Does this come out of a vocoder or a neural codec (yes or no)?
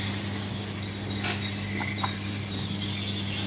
no